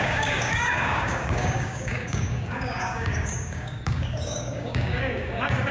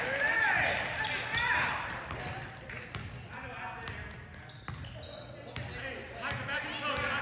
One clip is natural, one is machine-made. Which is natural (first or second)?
second